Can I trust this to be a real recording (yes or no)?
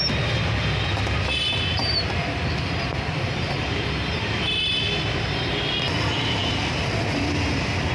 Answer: yes